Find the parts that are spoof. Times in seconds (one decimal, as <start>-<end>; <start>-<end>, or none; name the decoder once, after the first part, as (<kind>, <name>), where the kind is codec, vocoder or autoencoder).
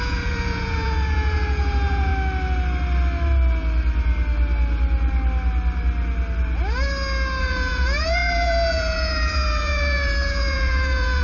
0.0-2.1 (vocoder, Vocos); 7.4-11.2